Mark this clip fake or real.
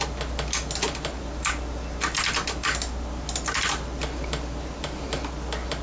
real